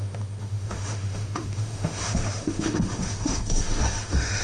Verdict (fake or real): fake